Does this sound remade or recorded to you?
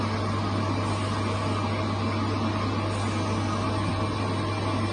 recorded